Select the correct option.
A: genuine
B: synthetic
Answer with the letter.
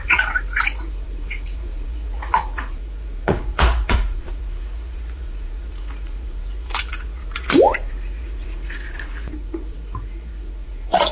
B